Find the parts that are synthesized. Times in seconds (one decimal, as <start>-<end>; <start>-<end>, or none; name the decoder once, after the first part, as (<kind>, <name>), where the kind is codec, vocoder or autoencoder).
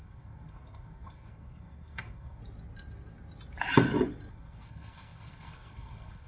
0.0-2.4 (codec, SNAC); 4.3-6.3